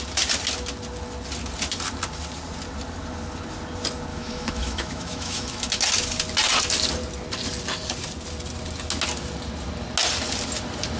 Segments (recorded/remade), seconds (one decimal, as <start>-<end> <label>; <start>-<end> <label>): 0.0-4.1 recorded; 4.1-5.8 remade; 5.8-11.0 recorded